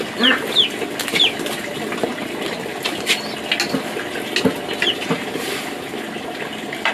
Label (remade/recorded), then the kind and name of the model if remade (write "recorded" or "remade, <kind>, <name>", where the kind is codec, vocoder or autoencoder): recorded